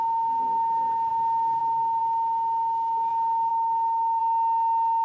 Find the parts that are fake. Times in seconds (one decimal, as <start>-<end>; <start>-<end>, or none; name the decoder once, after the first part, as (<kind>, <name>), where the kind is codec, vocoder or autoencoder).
3.5-4.2 (autoencoder, DAC-VAE)